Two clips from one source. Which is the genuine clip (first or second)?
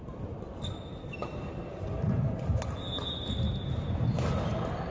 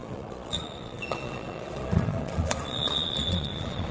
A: first